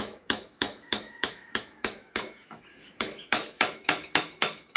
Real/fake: fake